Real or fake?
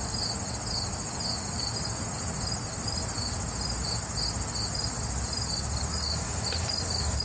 real